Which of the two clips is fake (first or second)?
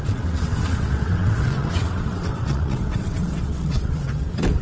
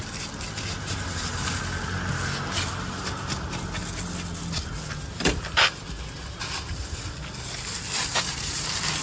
first